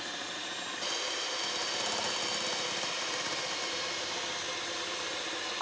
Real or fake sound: real